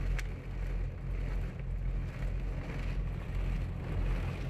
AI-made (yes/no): no